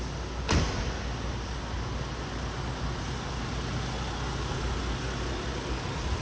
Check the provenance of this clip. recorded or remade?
recorded